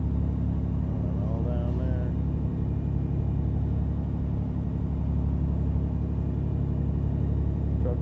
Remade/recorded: recorded